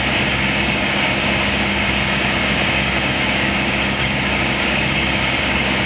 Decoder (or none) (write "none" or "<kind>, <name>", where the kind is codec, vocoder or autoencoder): codec, DAC